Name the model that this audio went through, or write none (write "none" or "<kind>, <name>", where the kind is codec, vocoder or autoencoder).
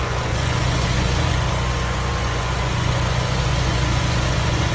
vocoder, Vocos